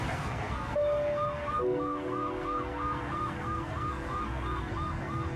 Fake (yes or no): yes